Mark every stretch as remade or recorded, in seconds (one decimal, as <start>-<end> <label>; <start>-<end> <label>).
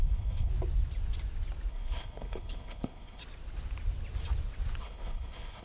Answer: 0.0-0.5 remade; 0.5-1.7 recorded; 1.7-3.2 remade; 3.2-4.8 recorded; 4.8-5.6 remade